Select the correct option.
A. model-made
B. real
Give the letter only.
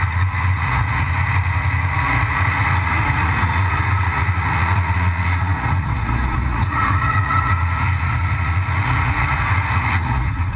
A